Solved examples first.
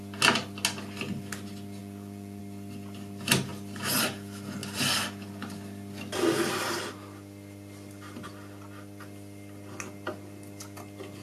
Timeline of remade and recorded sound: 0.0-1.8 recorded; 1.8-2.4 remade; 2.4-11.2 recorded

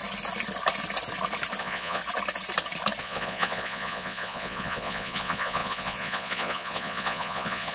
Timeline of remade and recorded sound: 0.0-1.6 recorded; 1.6-2.0 remade; 2.0-3.0 recorded; 3.0-7.7 remade

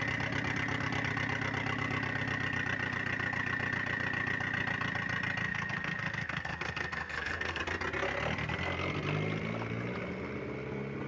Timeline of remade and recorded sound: 0.0-5.5 recorded; 5.5-7.6 remade; 7.6-11.1 recorded

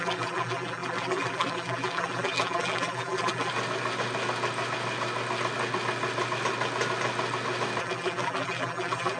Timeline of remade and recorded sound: 0.0-3.5 remade; 3.5-7.8 recorded; 7.8-9.2 remade

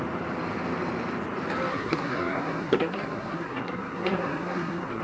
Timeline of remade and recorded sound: 0.0-1.7 recorded; 1.7-5.0 remade

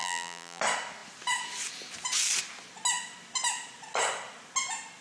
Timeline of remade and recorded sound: 0.0-0.6 remade; 0.6-5.0 recorded

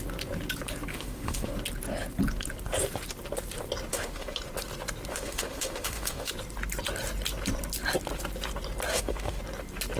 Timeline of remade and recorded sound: 0.0-0.9 recorded; 0.9-1.5 remade; 1.5-3.9 recorded; 3.9-4.4 remade; 4.4-5.1 recorded; 5.1-6.3 remade; 6.3-8.9 recorded; 8.9-9.4 remade; 9.4-10.0 recorded